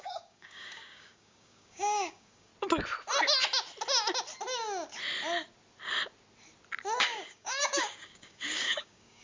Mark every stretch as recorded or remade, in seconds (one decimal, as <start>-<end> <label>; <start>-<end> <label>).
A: 0.0-2.5 remade; 2.5-7.0 recorded; 7.0-9.2 remade